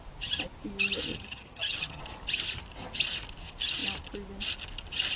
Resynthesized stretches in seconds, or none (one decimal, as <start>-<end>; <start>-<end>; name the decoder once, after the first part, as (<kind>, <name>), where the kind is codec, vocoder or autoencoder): 1.1-2.0 (vocoder, HiFi-GAN)